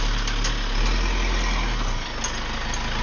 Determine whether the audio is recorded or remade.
recorded